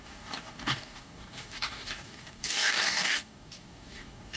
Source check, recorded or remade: remade